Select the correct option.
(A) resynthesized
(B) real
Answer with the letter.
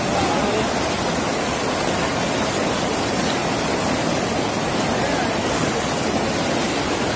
B